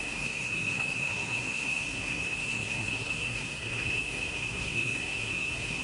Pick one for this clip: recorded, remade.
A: remade